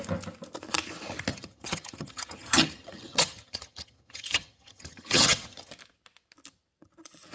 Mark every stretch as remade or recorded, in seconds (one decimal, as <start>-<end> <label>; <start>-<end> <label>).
0.0-1.3 recorded; 1.3-5.7 remade; 5.7-7.3 recorded